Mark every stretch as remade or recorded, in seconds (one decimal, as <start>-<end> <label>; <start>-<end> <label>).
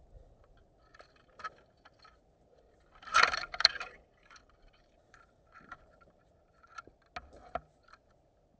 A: 0.0-3.1 recorded; 3.1-6.6 remade; 6.6-8.6 recorded